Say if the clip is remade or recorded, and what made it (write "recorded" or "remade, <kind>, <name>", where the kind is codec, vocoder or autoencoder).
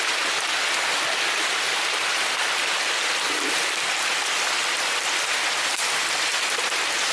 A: recorded